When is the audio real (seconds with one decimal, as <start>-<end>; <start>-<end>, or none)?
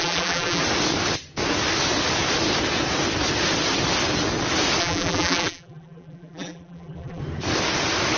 0.6-4.8; 7.2-8.2